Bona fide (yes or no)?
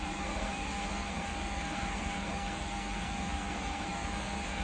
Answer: no